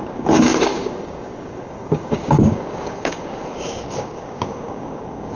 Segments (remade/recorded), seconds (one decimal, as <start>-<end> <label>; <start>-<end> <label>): 0.0-5.4 remade